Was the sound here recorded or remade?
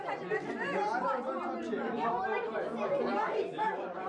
recorded